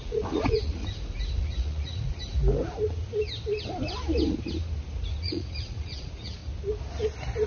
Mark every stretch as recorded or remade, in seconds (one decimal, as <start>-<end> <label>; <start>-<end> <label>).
0.0-0.8 remade; 0.8-1.4 recorded; 1.4-2.2 remade; 2.2-5.1 recorded; 5.1-6.4 remade; 6.4-7.5 recorded